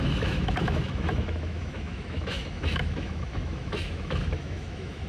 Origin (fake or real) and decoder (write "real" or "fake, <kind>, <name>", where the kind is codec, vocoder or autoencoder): fake, autoencoder, DAC-VAE